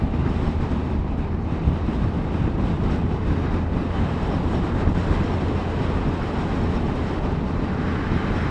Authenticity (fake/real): real